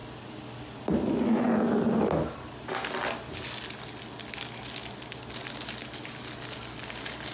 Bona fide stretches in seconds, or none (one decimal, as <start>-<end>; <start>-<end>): 0.0-7.3